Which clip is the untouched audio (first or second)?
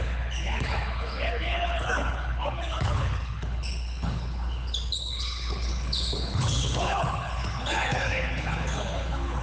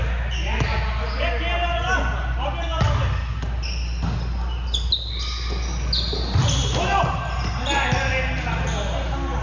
second